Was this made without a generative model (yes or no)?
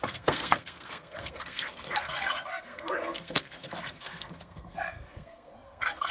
no